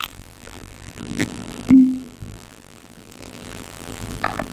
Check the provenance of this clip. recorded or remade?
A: remade